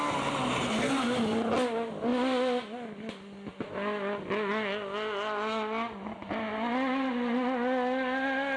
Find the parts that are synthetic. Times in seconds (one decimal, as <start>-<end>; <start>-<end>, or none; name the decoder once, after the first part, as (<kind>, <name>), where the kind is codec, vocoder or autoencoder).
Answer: none